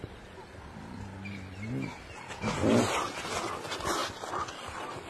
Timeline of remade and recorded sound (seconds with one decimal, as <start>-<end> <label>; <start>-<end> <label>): 0.0-5.1 recorded